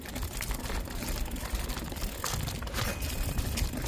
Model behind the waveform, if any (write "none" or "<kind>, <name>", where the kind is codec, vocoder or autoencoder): none